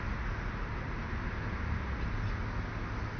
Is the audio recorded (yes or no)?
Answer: yes